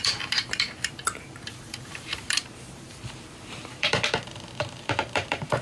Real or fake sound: fake